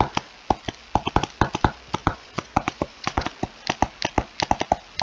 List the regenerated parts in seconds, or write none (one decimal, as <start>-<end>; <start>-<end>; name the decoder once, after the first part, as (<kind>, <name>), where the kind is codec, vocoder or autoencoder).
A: 2.0-3.3 (vocoder, Vocos)